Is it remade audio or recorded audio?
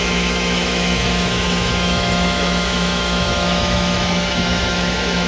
remade